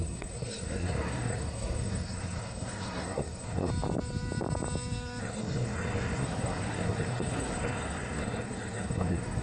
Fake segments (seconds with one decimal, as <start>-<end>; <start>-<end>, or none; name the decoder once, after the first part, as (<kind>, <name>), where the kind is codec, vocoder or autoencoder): 0.0-3.7 (codec, SNAC); 5.2-9.4